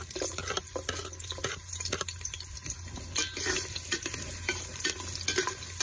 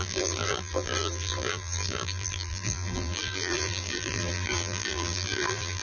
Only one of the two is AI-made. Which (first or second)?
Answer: second